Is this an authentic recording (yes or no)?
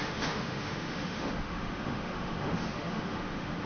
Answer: no